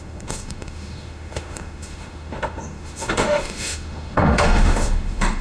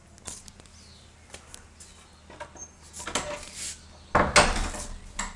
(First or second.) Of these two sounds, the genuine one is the second